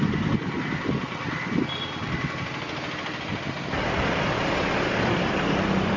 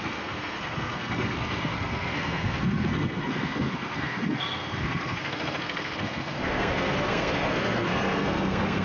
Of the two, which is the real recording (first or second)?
first